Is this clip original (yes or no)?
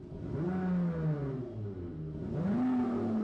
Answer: yes